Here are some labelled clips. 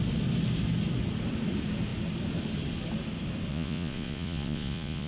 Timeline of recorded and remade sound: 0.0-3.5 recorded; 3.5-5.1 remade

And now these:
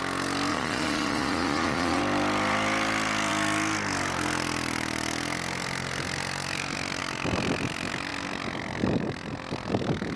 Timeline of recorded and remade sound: 0.0-0.5 recorded; 0.5-2.0 remade; 2.0-10.2 recorded

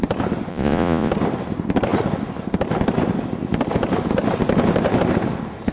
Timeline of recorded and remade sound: 0.0-0.5 recorded; 0.5-1.1 remade; 1.1-5.7 recorded

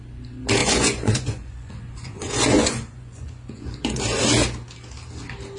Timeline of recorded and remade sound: 0.0-0.6 recorded; 0.6-4.0 remade; 4.0-5.6 recorded

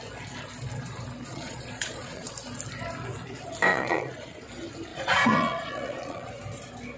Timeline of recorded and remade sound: 0.0-1.3 recorded; 1.3-2.3 remade; 2.3-3.7 recorded; 3.7-4.5 remade; 4.5-4.9 recorded; 4.9-6.3 remade; 6.3-7.0 recorded

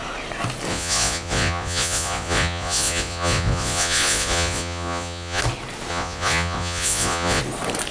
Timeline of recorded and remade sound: 0.0-0.7 recorded; 0.7-5.4 remade; 5.4-5.9 recorded; 5.9-7.4 remade; 7.4-7.9 recorded